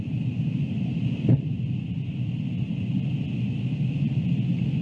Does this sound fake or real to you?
fake